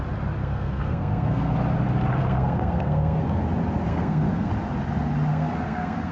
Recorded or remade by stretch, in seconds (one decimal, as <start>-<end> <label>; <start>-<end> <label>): 0.0-0.4 recorded; 0.4-1.5 remade; 1.5-2.2 recorded; 2.2-3.4 remade; 3.4-3.9 recorded; 3.9-4.5 remade; 4.5-5.3 recorded; 5.3-6.1 remade